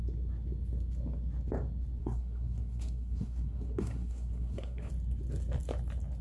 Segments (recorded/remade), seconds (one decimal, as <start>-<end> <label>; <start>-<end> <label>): 0.0-2.0 recorded; 2.0-4.9 remade; 4.9-6.2 recorded